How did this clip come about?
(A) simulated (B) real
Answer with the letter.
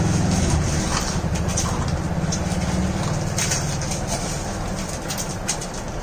B